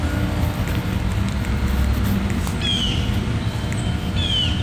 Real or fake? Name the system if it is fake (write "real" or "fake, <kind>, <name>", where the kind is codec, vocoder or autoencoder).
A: real